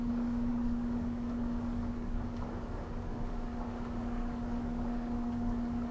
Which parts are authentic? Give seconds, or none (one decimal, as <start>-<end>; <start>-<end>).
none